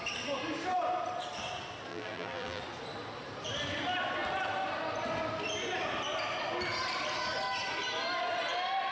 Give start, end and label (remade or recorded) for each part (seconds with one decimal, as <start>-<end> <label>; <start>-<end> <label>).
0.0-1.9 recorded; 1.9-2.6 remade; 2.6-8.9 recorded